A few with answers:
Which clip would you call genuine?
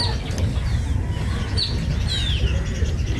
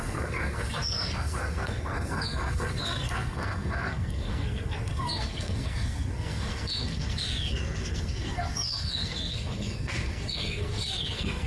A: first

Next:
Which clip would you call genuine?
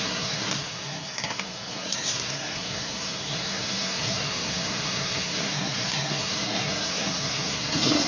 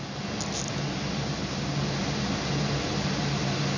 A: second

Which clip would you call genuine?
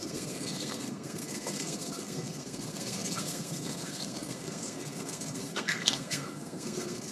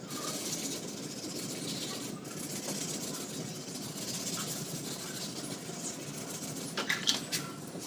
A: second